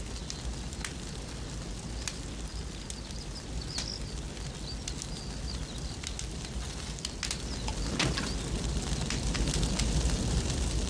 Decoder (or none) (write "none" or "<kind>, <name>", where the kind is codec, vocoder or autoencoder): none